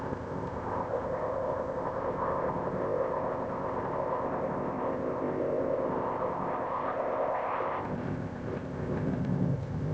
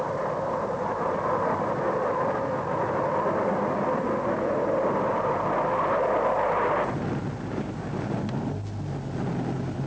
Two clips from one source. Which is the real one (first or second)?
second